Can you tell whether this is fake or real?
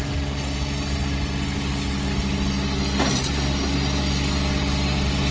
real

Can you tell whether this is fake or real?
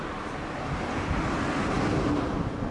real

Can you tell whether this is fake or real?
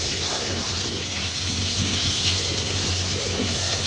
fake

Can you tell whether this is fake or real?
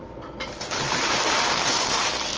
real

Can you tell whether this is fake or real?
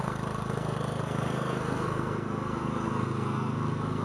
fake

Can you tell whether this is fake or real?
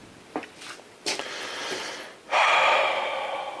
real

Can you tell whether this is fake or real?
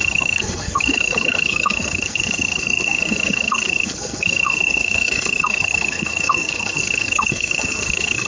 fake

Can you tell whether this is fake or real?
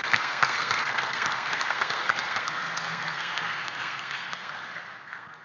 fake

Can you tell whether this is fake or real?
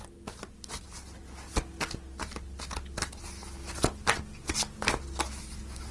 real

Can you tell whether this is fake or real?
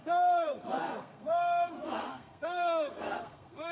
fake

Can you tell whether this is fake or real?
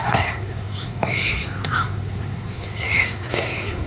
fake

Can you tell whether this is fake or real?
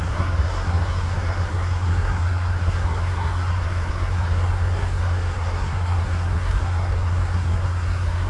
fake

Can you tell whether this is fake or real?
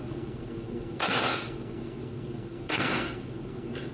fake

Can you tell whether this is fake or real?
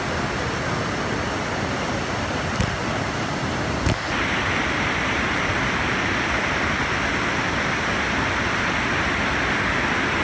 real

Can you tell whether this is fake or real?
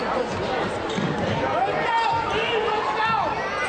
real